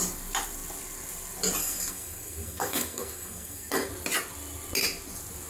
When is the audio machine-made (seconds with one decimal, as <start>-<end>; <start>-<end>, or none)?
1.6-3.9